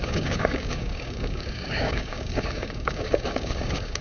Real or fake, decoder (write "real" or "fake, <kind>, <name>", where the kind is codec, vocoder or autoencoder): fake, codec, DAC